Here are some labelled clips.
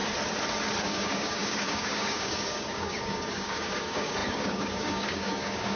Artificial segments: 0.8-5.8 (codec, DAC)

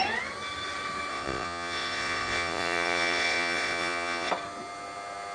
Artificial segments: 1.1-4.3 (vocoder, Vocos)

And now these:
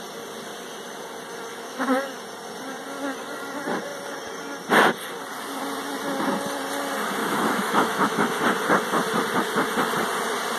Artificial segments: 1.5-2.1 (autoencoder, DAC-VAE); 7.2-8.4

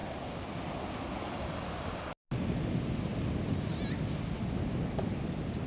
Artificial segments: none

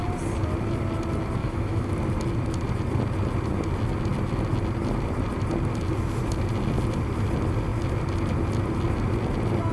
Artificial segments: 1.4-1.9 (autoencoder, DAC-VAE)

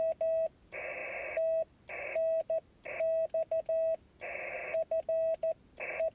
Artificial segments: none

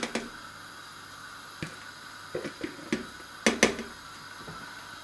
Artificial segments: none

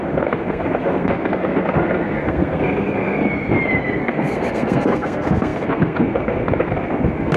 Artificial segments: 0.0-3.2 (codec, SNAC); 4.0-7.4